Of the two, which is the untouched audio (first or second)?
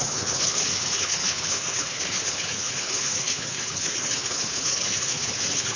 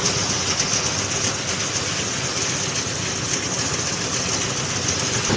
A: second